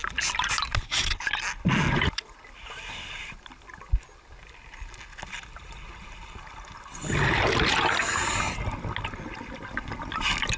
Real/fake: real